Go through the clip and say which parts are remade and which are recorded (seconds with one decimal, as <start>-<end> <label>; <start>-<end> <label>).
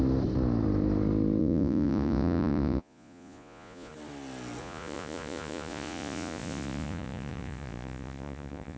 0.0-1.4 recorded; 1.4-3.9 remade; 3.9-4.6 recorded; 4.6-8.8 remade